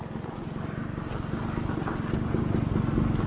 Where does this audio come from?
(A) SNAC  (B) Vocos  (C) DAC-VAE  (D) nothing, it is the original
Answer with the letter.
D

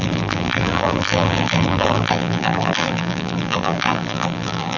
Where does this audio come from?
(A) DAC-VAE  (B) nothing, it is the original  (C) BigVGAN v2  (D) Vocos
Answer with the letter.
C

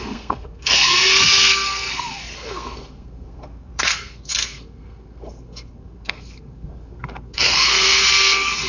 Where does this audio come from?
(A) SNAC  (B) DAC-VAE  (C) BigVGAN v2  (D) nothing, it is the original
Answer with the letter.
A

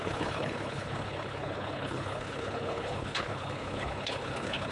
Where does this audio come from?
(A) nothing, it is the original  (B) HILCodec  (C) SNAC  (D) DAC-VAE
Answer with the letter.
B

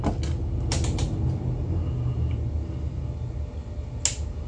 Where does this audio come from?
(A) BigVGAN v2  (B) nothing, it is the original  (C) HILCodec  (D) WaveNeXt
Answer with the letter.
B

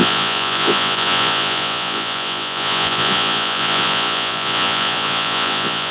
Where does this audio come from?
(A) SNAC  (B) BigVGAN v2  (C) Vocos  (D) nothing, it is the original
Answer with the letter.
C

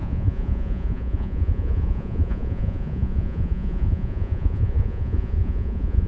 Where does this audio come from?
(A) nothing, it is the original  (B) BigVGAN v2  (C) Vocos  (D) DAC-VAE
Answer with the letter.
C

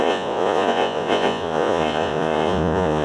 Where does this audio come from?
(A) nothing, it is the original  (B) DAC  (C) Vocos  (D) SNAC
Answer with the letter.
C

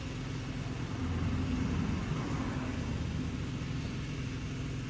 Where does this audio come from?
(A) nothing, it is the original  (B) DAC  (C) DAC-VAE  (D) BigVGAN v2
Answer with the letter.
A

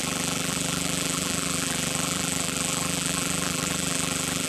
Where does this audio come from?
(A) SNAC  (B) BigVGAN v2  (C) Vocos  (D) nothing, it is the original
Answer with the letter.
B